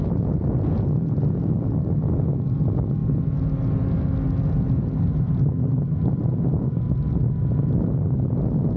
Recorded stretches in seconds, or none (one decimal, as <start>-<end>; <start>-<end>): 0.0-8.8